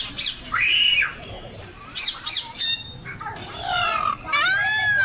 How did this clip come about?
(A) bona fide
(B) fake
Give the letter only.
B